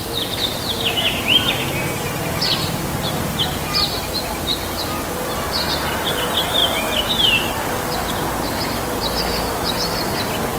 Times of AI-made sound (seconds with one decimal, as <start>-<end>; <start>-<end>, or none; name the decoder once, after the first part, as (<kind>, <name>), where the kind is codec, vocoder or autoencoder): none